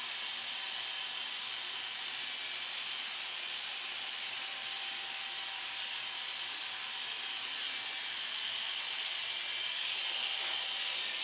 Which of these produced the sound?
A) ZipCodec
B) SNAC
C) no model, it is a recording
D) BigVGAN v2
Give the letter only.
C